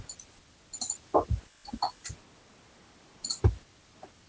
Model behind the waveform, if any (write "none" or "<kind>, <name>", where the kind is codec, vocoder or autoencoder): none